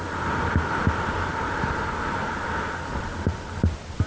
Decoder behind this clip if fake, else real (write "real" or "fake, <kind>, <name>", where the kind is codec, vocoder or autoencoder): real